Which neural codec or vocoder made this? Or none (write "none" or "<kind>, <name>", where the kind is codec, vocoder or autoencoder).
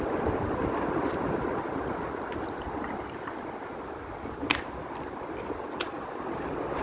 none